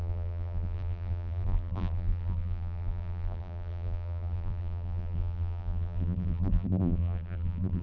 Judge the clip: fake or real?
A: fake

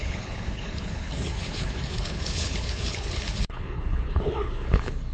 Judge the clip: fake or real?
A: fake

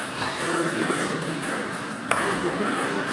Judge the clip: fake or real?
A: fake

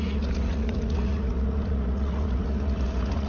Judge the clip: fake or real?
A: fake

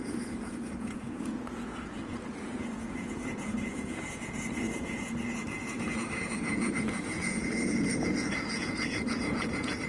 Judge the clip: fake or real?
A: fake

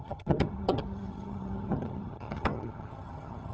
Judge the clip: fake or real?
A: fake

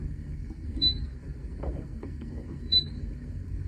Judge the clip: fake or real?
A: fake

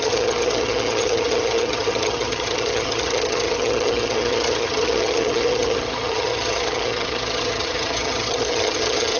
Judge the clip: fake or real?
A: fake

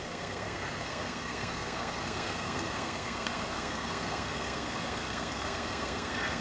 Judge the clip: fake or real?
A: fake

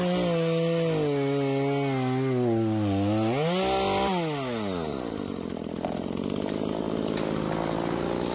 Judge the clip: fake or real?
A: real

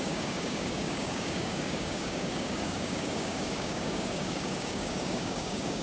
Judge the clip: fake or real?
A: fake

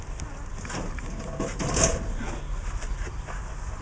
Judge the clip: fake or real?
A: real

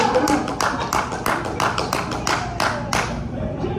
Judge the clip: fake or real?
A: real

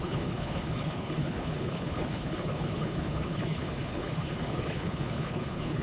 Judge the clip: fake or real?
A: fake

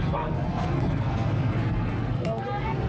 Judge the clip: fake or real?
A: fake